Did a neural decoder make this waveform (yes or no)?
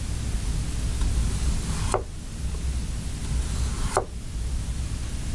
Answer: no